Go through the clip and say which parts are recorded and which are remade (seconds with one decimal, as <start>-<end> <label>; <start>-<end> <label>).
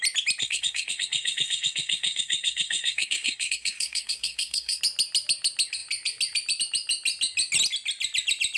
0.0-0.4 recorded; 0.4-4.8 remade; 4.8-8.6 recorded